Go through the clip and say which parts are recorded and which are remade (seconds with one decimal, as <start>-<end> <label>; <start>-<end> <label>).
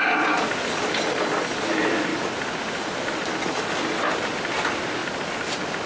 0.0-5.9 recorded